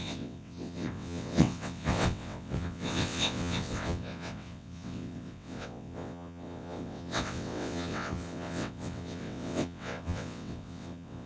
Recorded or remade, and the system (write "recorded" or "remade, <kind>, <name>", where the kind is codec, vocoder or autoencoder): remade, vocoder, WaveNeXt